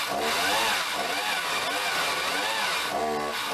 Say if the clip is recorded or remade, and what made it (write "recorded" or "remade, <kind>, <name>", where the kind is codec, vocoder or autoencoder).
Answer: recorded